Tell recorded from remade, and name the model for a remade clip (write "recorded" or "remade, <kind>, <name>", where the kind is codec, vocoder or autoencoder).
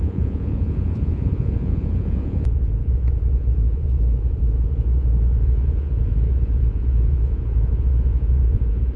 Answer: remade, vocoder, Vocos